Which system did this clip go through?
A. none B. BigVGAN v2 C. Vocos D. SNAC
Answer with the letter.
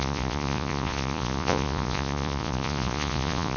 C